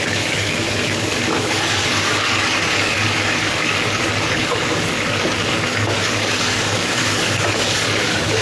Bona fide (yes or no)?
no